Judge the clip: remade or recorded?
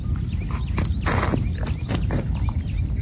recorded